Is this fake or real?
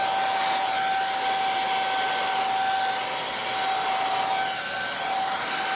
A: real